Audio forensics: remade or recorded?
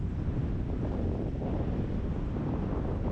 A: recorded